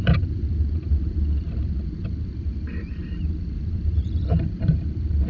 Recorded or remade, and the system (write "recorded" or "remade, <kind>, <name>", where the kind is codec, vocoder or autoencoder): remade, vocoder, BigVGAN v2